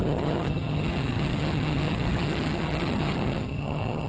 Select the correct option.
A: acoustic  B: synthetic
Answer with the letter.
B